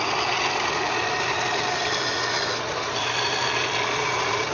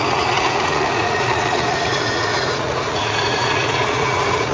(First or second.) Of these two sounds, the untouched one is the first